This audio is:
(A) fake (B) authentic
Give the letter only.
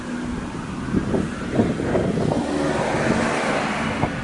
B